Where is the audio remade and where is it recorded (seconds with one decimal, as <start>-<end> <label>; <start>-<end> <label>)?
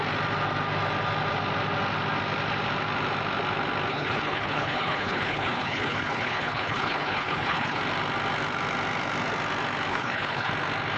0.0-3.9 recorded; 3.9-7.8 remade; 7.8-9.9 recorded; 9.9-10.5 remade; 10.5-11.0 recorded